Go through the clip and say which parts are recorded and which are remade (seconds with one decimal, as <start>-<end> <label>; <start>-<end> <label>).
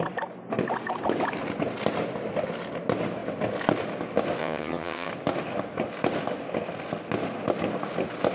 0.0-4.4 recorded; 4.4-5.1 remade; 5.1-8.3 recorded